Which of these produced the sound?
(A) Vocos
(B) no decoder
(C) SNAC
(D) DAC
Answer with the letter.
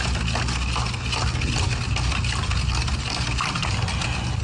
B